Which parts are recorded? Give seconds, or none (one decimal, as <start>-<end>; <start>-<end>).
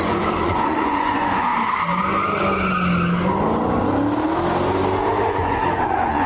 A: 1.5-5.3